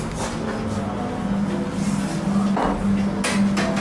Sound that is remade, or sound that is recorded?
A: recorded